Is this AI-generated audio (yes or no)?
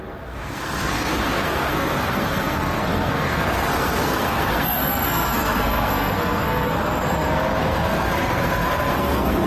yes